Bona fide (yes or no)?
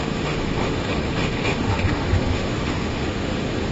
no